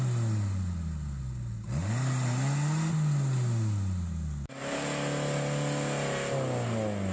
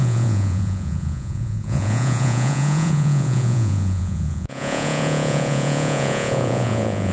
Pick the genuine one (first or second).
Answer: first